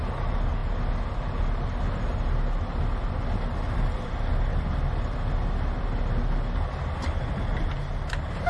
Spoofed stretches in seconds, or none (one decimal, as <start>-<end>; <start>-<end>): none